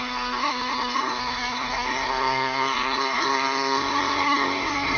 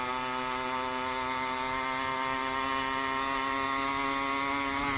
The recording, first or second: second